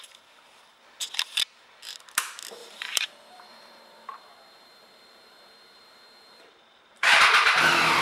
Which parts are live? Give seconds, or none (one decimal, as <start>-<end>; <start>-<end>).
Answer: 0.0-2.6; 7.2-8.0